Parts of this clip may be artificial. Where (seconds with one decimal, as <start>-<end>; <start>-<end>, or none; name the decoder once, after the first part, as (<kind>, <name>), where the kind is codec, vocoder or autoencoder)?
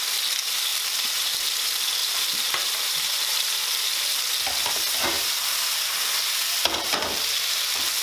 0.7-1.4 (vocoder, BigVGAN v2); 2.0-4.2; 6.6-7.6